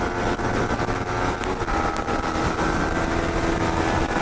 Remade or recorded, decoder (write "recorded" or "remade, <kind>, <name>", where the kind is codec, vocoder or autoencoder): recorded